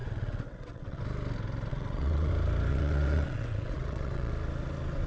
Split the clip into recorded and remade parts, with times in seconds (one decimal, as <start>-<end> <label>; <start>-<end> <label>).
0.0-1.0 remade; 1.0-1.7 recorded; 1.7-2.3 remade; 2.3-2.7 recorded; 2.7-4.3 remade; 4.3-5.1 recorded